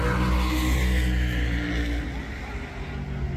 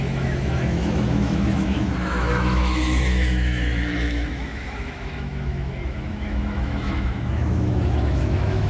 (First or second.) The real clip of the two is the first